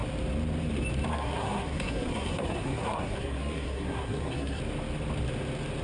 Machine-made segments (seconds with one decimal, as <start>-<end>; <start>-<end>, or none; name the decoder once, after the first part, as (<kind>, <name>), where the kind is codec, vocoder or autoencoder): 1.1-4.6 (codec, SNAC)